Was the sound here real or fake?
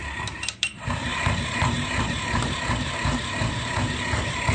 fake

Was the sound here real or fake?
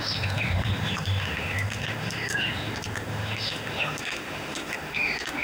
fake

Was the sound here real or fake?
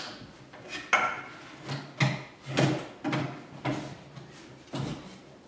real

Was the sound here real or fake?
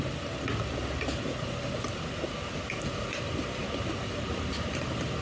real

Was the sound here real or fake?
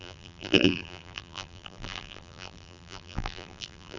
fake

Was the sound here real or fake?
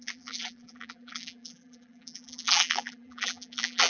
fake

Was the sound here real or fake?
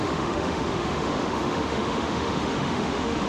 fake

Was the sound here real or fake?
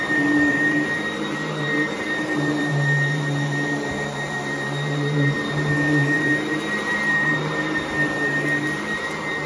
fake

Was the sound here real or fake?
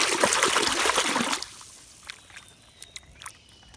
real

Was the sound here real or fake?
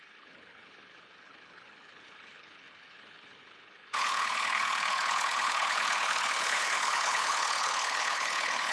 fake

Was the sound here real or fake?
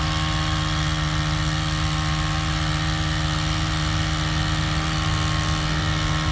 real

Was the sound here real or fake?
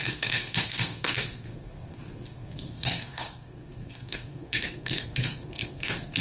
fake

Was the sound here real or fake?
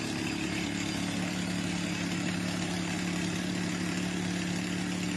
real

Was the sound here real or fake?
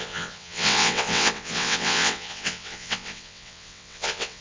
fake